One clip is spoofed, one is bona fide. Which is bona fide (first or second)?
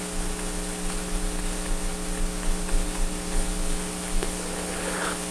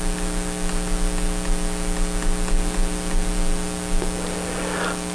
second